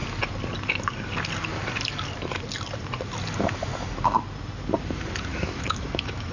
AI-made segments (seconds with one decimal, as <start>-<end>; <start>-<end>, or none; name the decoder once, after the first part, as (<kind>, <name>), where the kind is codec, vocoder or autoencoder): 5.3-6.3 (autoencoder, DAC-VAE)